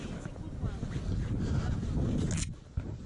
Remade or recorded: recorded